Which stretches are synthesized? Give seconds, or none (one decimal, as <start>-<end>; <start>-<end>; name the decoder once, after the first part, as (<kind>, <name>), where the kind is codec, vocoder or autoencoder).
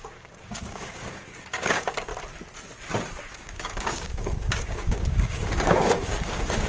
0.0-2.1 (codec, DAC); 3.3-6.7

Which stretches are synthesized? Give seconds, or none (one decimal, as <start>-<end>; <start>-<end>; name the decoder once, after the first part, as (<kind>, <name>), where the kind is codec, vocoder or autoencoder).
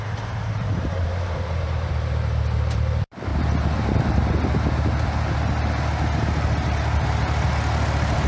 0.0-3.3 (vocoder, BigVGAN v2)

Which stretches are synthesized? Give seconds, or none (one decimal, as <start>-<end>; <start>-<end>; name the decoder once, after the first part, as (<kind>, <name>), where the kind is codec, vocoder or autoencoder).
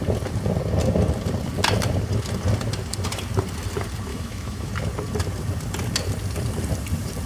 4.1-4.7 (autoencoder, DAC-VAE)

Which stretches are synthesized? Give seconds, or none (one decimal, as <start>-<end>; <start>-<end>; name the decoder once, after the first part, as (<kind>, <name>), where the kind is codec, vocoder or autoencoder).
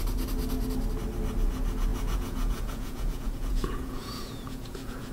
1.9-5.1 (vocoder, Vocos)